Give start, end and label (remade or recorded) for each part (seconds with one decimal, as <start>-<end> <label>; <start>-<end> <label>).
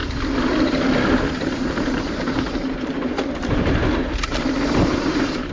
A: 0.0-1.4 recorded; 1.4-5.5 remade